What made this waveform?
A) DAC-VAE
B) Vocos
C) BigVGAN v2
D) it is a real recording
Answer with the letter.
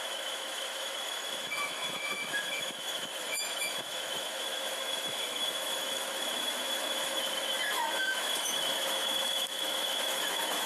A